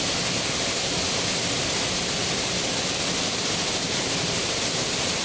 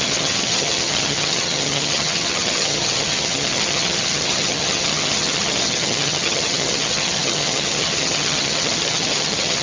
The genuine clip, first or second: first